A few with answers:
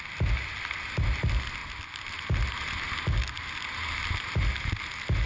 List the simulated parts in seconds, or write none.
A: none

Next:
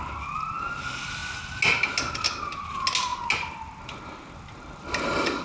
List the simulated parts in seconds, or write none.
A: none

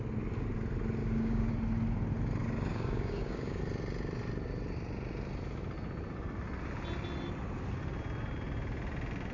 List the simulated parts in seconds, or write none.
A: 1.0-1.5 (codec, DAC); 2.7-3.6

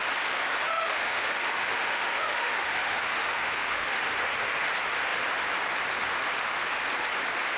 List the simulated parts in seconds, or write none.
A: 0.7-4.1 (autoencoder, DAC-VAE)

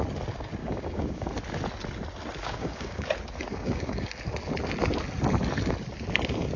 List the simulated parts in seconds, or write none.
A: 0.6-1.3 (codec, DAC); 2.4-3.1; 3.5-4.1

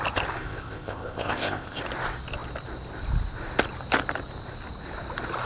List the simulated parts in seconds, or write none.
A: 0.4-1.8 (codec, ZipCodec)